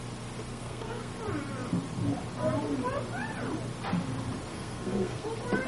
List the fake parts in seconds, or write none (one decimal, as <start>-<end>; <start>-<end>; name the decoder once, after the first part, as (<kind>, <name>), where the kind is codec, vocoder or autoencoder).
0.5-1.1 (codec, SNAC); 4.5-5.3